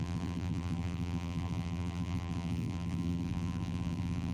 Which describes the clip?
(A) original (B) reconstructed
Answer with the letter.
B